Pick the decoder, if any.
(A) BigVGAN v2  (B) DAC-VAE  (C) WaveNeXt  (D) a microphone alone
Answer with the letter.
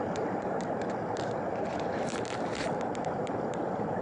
A